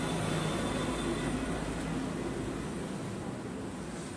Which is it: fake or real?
real